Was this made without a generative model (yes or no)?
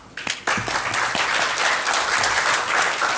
yes